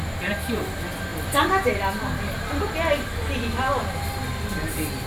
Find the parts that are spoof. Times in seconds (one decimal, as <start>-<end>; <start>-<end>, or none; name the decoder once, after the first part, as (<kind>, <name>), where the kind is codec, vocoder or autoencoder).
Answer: none